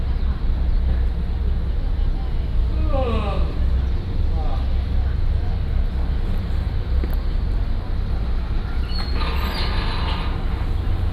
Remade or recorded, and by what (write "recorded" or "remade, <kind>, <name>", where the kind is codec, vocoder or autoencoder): recorded